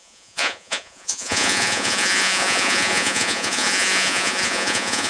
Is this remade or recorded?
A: remade